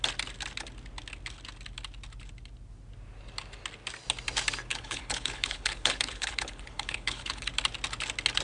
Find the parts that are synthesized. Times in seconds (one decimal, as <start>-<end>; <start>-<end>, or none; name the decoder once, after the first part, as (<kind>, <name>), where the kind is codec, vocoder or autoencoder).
4.7-7.5 (codec, HILCodec)